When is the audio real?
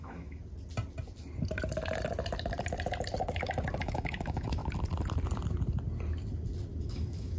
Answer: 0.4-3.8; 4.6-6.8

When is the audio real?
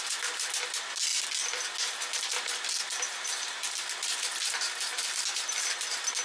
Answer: 0.0-6.2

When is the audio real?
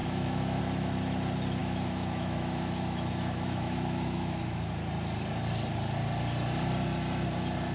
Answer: 0.6-1.6; 4.7-7.7